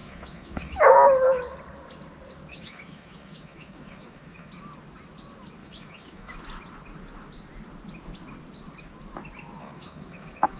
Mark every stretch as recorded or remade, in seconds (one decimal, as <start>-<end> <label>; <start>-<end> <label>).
0.0-0.9 remade; 0.9-2.5 recorded; 2.5-4.5 remade; 4.5-5.6 recorded; 5.6-6.4 remade; 6.4-9.6 recorded; 9.6-10.6 remade

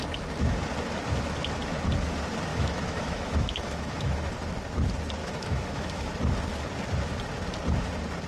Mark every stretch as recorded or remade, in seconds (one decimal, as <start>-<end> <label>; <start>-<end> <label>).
0.0-2.5 recorded; 2.5-4.3 remade; 4.3-5.2 recorded; 5.2-6.1 remade; 6.1-8.3 recorded

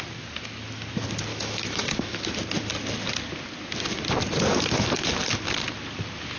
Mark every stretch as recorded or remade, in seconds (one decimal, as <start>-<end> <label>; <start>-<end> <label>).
0.0-1.3 recorded; 1.3-2.3 remade; 2.3-4.5 recorded; 4.5-5.1 remade; 5.1-6.4 recorded

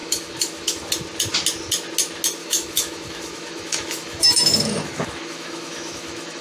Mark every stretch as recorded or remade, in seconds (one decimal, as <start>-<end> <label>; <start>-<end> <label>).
0.0-0.9 remade; 0.9-2.4 recorded; 2.4-6.4 remade